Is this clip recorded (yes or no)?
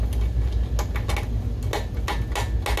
yes